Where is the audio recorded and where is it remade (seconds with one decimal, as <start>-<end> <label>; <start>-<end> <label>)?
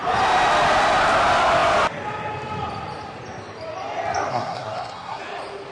0.0-4.3 recorded; 4.3-5.2 remade; 5.2-5.7 recorded